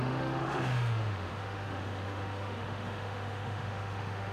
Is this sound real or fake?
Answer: fake